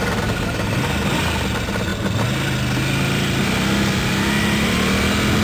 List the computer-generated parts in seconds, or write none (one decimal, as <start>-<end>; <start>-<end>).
none